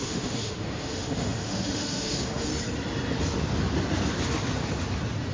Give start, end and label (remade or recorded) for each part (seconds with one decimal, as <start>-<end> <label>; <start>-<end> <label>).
0.0-2.5 remade; 2.5-5.3 recorded